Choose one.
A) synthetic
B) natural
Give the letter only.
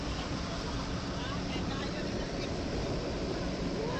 A